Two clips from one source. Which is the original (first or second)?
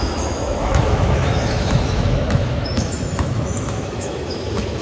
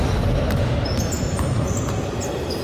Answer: second